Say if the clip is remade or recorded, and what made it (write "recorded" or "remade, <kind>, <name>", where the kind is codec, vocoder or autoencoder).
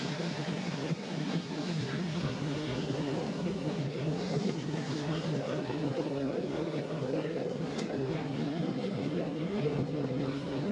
remade, codec, SNAC